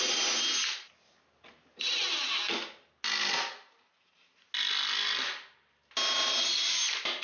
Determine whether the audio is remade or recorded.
recorded